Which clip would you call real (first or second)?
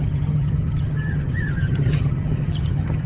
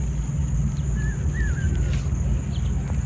second